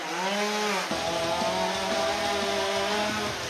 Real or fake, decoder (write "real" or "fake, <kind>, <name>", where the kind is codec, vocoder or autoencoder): real